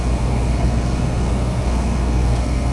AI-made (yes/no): yes